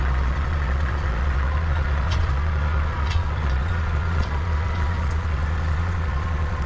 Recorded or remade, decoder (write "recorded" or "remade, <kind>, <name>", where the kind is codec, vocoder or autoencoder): remade, vocoder, Vocos